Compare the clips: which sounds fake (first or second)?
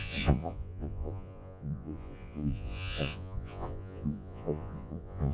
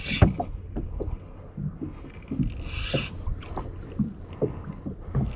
first